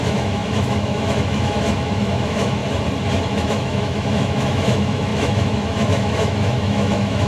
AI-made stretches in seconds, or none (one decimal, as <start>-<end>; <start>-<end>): 0.0-2.6; 3.3-7.3